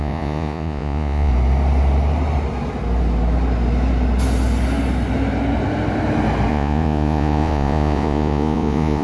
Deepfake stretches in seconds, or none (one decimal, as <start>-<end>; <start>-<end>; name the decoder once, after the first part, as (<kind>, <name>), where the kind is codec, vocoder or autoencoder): 0.0-1.3 (vocoder, Vocos); 6.5-9.0